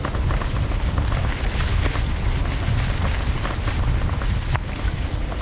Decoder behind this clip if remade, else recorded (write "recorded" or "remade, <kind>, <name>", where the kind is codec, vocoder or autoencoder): recorded